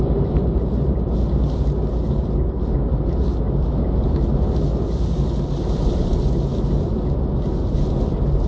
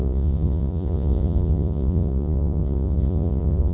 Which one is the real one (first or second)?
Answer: first